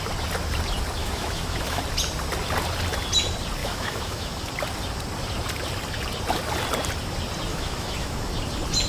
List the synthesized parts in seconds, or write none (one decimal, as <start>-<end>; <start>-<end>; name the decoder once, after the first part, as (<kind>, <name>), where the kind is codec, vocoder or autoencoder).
1.0-1.8 (autoencoder, DAC-VAE); 3.6-4.4; 7.5-8.3